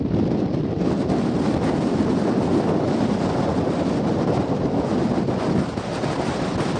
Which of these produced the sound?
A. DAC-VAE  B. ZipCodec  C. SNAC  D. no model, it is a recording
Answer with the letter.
D